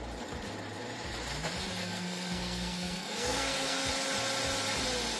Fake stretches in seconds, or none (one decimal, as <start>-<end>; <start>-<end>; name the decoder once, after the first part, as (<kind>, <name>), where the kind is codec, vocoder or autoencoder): 1.8-3.9 (codec, SNAC)